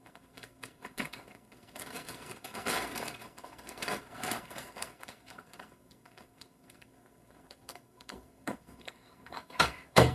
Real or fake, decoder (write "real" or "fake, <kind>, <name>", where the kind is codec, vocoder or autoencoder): fake, codec, SNAC